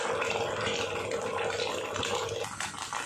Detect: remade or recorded recorded